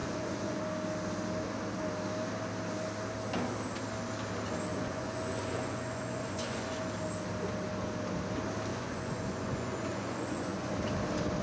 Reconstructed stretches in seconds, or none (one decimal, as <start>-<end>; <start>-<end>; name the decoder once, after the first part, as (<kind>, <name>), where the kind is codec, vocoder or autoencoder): 0.0-0.6 (vocoder, Vocos); 4.7-6.9; 8.7-10.7